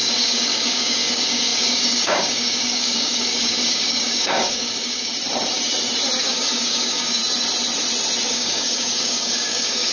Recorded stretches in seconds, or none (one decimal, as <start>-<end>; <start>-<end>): 5.1-6.2; 7.2-8.3